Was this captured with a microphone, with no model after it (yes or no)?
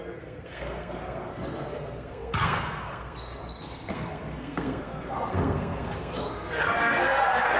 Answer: no